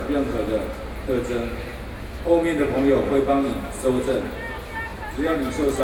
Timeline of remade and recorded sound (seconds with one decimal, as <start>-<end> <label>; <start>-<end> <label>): 0.0-4.9 recorded; 4.9-5.8 remade